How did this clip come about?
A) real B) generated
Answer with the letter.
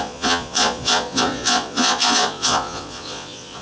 B